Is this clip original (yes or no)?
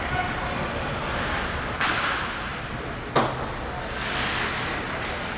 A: yes